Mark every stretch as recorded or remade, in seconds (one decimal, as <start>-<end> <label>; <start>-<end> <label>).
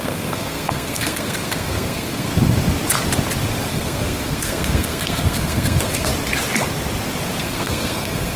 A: 0.0-2.3 remade; 2.3-3.7 recorded; 3.7-6.1 remade; 6.1-7.4 recorded; 7.4-8.4 remade